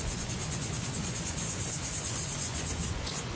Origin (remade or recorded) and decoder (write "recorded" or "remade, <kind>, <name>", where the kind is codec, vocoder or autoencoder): remade, vocoder, Vocos